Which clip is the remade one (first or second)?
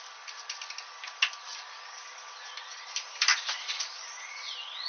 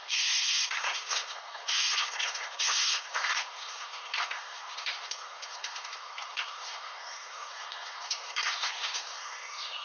second